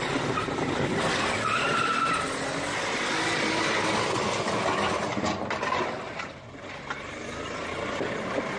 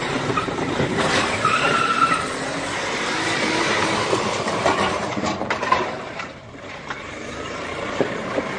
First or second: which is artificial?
second